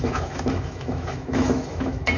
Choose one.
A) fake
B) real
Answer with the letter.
A